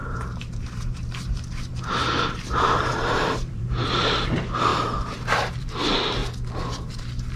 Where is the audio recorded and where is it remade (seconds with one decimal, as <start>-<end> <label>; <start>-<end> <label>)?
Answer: 0.0-6.2 remade; 6.2-6.9 recorded; 6.9-7.4 remade